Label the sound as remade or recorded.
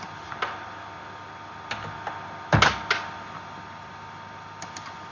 recorded